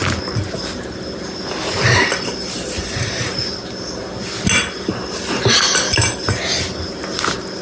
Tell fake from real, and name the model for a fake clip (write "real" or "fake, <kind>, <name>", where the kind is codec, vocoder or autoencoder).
real